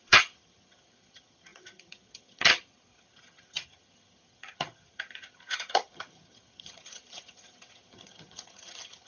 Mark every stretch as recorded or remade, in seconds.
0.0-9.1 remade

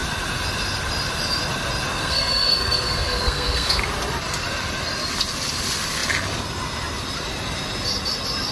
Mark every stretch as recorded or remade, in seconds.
0.0-1.9 recorded; 1.9-3.8 remade; 3.8-8.5 recorded

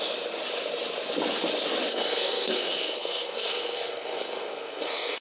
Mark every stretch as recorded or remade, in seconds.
0.0-1.9 recorded; 1.9-5.2 remade

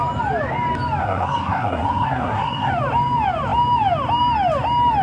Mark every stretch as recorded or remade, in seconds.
0.0-1.0 recorded; 1.0-2.7 remade; 2.7-5.0 recorded

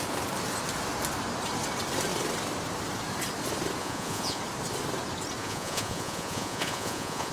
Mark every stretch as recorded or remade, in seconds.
0.0-3.8 recorded; 3.8-4.4 remade; 4.4-5.4 recorded; 5.4-7.3 remade

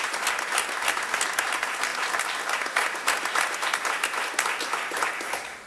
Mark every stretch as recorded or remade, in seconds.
0.0-5.7 recorded

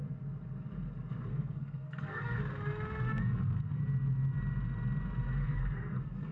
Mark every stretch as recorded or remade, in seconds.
0.0-1.3 recorded; 1.3-2.4 remade; 2.4-3.1 recorded; 3.1-3.8 remade; 3.8-5.4 recorded; 5.4-6.3 remade